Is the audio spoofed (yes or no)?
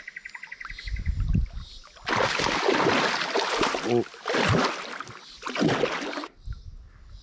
no